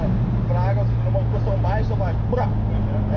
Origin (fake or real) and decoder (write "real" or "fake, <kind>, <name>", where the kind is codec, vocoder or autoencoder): real